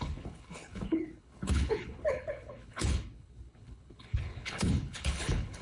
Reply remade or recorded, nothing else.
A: remade